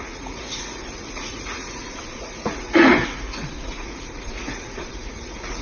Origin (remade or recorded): remade